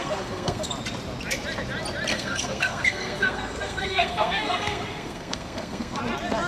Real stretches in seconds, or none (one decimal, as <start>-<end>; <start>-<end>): 0.7-2.1; 6.0-6.5